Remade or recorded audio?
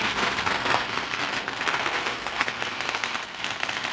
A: remade